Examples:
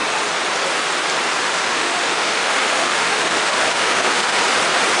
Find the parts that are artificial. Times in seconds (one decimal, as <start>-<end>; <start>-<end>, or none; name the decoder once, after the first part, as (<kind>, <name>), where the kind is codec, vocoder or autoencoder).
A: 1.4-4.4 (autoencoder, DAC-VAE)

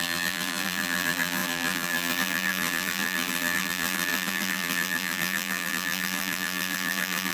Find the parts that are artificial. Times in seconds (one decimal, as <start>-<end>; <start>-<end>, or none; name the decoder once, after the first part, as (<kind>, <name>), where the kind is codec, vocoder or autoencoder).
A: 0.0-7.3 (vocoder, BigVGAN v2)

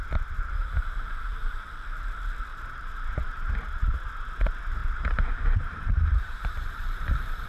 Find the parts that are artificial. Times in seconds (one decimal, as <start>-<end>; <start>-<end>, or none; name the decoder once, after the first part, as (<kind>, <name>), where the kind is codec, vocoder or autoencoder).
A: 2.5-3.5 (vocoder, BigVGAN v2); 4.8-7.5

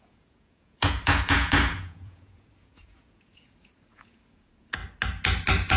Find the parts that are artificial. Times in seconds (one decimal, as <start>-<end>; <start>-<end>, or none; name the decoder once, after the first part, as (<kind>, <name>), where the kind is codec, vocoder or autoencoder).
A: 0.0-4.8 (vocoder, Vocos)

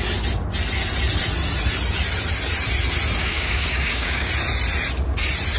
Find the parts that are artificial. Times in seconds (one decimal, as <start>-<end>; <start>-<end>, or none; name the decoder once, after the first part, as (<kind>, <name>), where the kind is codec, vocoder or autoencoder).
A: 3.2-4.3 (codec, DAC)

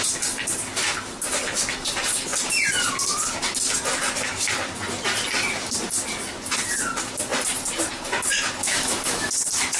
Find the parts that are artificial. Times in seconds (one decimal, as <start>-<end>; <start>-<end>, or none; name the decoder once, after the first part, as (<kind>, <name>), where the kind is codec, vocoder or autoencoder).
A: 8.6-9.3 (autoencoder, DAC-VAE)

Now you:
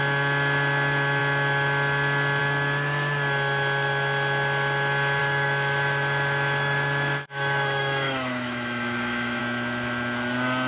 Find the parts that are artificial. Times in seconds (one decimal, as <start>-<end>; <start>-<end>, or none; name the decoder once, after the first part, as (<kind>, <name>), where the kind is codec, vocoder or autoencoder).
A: 5.2-9.4 (autoencoder, DAC-VAE)

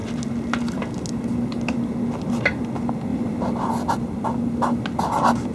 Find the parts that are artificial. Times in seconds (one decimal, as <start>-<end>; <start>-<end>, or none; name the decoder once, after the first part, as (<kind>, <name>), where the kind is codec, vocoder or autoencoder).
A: none